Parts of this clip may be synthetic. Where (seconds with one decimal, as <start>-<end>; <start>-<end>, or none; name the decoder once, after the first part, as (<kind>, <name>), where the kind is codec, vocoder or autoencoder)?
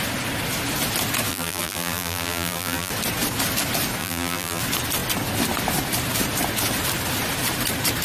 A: 1.3-2.9 (vocoder, BigVGAN v2); 4.0-4.6